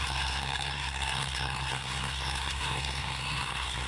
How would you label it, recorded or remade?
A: remade